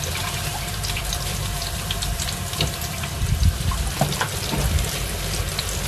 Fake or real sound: fake